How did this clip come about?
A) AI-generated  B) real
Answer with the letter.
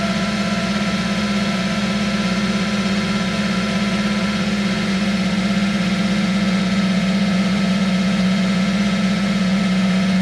A